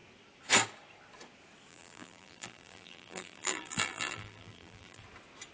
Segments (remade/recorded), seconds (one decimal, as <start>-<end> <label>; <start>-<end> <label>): 0.0-1.7 recorded; 1.7-5.0 remade; 5.0-5.5 recorded